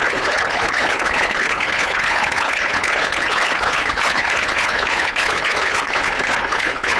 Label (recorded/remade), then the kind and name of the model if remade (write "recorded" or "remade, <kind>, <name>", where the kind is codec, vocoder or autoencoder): remade, codec, HILCodec